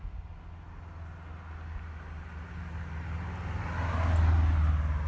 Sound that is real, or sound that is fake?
real